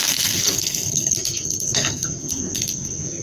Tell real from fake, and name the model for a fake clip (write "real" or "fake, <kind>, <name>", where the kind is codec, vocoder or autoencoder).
fake, codec, SNAC